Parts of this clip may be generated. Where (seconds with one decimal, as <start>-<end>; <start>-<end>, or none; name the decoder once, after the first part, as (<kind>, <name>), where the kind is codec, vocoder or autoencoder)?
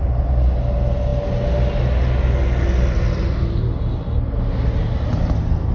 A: none